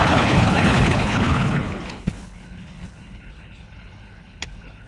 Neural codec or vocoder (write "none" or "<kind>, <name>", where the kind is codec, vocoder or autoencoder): codec, HILCodec